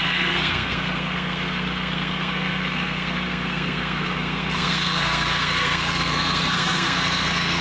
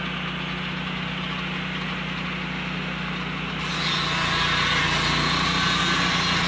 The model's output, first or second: first